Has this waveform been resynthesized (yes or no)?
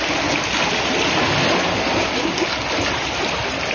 no